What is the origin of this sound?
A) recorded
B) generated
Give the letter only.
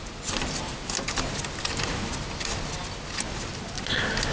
A